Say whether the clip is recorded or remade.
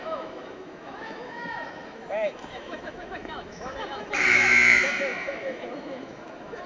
remade